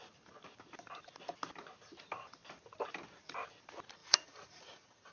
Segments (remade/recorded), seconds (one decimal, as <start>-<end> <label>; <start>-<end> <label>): 0.0-4.0 recorded; 4.0-5.1 remade